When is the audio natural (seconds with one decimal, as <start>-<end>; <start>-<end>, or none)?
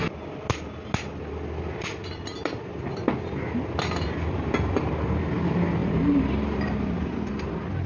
0.0-5.8; 7.2-7.9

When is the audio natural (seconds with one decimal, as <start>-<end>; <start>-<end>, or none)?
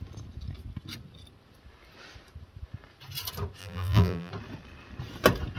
0.0-3.6; 4.3-5.6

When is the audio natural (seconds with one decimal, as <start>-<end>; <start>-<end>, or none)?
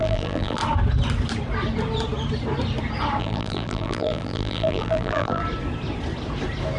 0.6-3.2; 5.4-6.8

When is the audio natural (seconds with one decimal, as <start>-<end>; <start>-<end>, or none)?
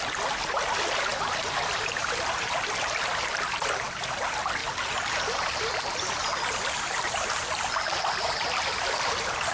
4.6-7.5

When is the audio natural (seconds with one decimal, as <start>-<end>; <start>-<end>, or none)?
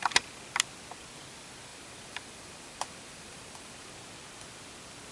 0.0-1.7; 3.9-5.1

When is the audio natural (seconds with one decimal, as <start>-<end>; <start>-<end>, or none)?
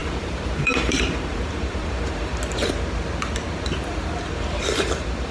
2.3-4.3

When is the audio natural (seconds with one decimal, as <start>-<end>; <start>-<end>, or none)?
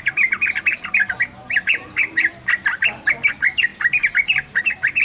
0.0-1.4; 3.1-3.7; 4.6-5.0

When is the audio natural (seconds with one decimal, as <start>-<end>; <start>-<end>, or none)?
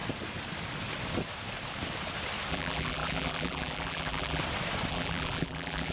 0.0-2.5; 4.4-4.9